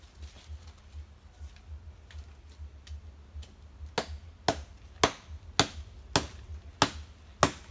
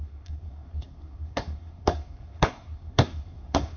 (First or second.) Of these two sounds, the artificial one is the second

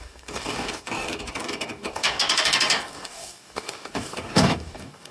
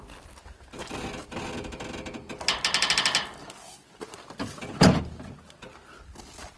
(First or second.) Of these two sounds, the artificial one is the first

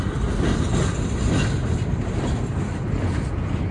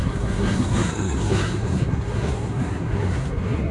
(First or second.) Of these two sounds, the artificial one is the second